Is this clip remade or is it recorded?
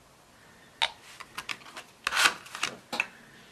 recorded